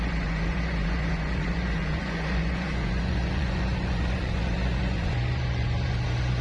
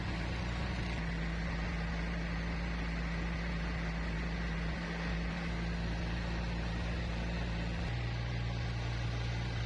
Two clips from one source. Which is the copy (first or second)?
first